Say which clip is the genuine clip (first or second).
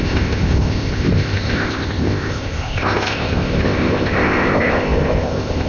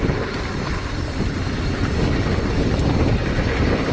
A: second